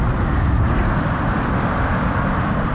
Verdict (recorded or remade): recorded